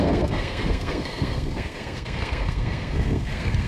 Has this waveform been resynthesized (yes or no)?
yes